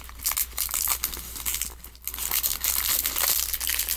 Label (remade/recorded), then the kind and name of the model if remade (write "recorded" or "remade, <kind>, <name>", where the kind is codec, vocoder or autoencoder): recorded